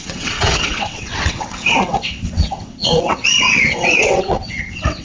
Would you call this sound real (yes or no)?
no